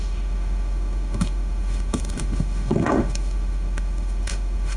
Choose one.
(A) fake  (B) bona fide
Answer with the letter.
A